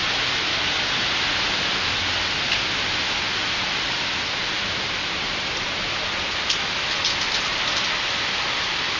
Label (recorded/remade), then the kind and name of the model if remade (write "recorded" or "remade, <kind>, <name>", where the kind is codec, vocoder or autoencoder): recorded